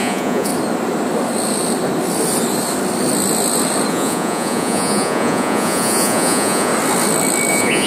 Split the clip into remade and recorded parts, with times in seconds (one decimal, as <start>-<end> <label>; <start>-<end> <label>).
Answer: 0.0-0.5 remade; 0.5-3.9 recorded; 3.9-6.7 remade; 6.7-7.5 recorded; 7.5-7.9 remade